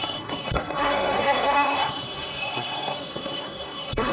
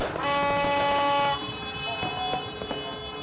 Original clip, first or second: second